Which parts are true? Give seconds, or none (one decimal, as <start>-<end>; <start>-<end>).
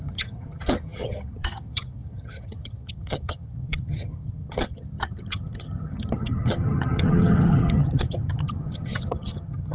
none